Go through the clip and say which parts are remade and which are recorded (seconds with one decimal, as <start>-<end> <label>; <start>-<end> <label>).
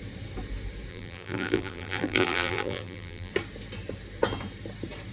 0.0-0.9 recorded; 0.9-3.3 remade; 3.3-5.1 recorded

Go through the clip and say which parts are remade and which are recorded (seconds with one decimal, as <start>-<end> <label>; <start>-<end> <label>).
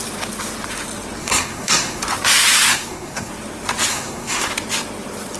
0.0-1.2 recorded; 1.2-2.0 remade; 2.0-2.7 recorded; 2.7-3.3 remade; 3.3-3.9 recorded; 3.9-4.5 remade; 4.5-5.4 recorded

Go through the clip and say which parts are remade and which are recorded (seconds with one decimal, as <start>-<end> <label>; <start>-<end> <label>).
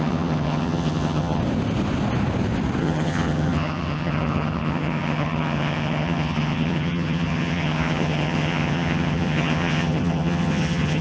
0.0-1.4 remade; 1.4-2.8 recorded; 2.8-11.0 remade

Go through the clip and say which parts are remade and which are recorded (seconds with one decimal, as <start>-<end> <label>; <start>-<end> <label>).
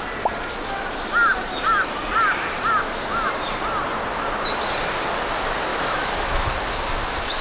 0.0-5.7 recorded; 5.7-6.5 remade; 6.5-7.4 recorded